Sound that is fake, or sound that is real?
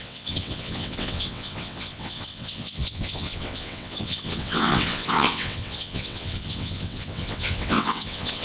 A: fake